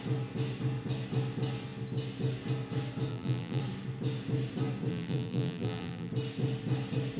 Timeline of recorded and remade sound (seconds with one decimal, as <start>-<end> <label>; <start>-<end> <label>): 0.0-3.1 recorded; 3.1-3.6 remade; 3.6-4.9 recorded; 4.9-6.1 remade; 6.1-7.2 recorded